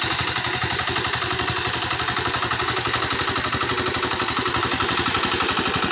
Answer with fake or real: real